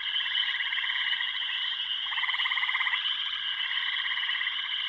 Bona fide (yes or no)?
no